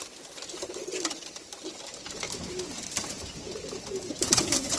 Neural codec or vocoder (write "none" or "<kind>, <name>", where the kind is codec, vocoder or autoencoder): none